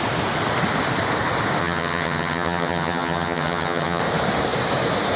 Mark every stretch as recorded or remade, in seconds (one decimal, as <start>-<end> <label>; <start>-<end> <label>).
0.0-1.6 recorded; 1.6-4.0 remade; 4.0-5.2 recorded